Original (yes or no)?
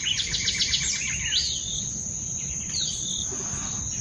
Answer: yes